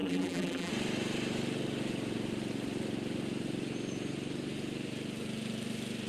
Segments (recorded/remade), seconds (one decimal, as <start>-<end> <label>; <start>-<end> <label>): 0.0-0.7 remade; 0.7-6.1 recorded